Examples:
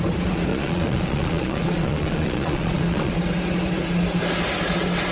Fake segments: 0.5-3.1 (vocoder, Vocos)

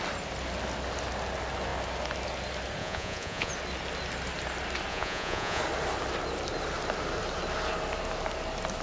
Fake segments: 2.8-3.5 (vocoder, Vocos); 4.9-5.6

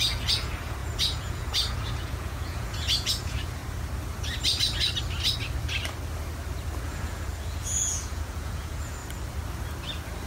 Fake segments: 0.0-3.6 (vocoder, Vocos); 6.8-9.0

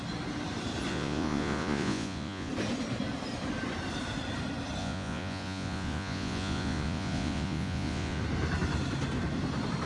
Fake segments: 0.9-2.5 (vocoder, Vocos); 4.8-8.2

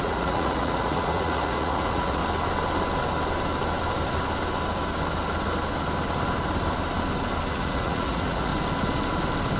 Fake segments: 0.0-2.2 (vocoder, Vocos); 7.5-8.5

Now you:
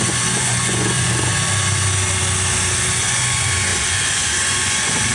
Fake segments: 0.0-1.3 (vocoder, Vocos); 3.0-5.1

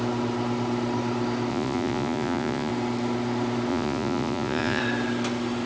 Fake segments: 1.5-2.7 (vocoder, Vocos); 3.7-4.8